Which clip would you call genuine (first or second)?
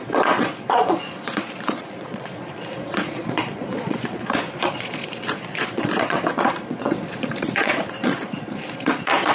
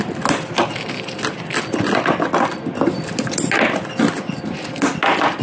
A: second